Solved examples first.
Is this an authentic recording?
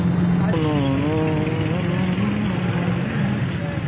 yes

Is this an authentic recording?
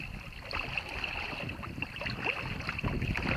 yes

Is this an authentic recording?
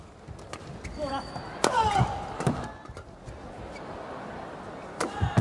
yes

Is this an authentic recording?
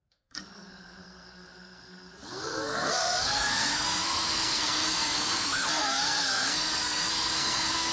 no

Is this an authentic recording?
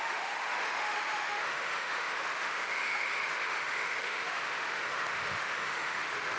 no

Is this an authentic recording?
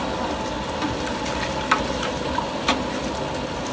yes